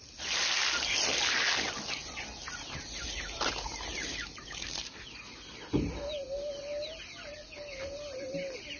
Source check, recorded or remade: recorded